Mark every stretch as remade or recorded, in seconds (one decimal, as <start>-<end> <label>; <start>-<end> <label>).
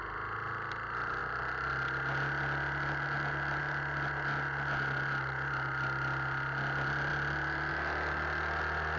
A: 0.0-9.0 recorded